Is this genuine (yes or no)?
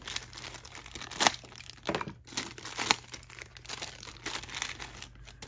yes